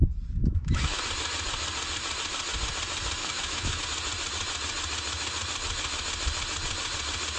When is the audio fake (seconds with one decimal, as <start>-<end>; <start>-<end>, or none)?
0.4-1.0; 3.2-3.8